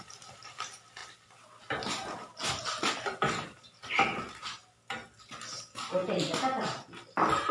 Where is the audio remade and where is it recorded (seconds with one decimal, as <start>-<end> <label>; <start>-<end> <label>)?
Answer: 0.0-7.5 recorded